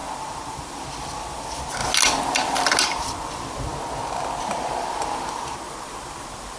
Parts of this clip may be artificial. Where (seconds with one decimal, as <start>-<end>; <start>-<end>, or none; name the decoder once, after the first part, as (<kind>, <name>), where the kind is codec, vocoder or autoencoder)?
0.0-1.8 (vocoder, BigVGAN v2); 2.8-3.7; 4.4-6.6